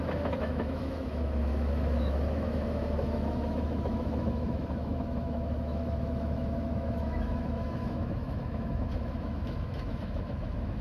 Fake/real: fake